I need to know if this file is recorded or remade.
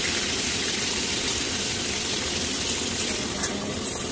recorded